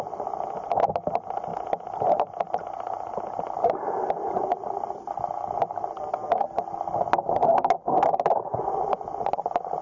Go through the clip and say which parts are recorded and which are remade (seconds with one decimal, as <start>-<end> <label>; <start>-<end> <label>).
0.0-9.8 recorded